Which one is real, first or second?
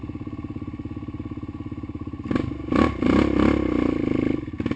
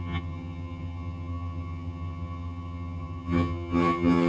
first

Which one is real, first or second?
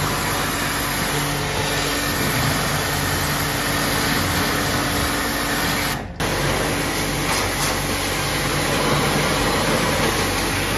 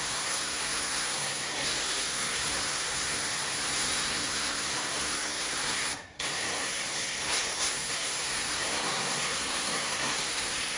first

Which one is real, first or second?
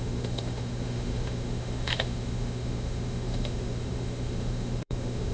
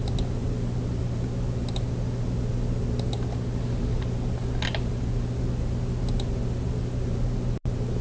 second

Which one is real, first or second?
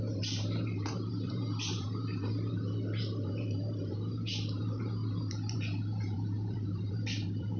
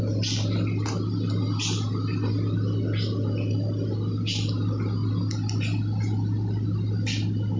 second